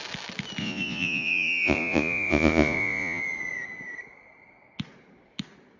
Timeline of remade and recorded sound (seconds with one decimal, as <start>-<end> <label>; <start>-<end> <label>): 0.0-0.6 recorded; 0.6-3.2 remade; 3.2-5.8 recorded